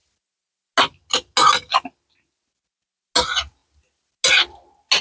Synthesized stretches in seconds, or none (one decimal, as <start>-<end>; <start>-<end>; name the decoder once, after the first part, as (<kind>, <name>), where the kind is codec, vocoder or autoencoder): none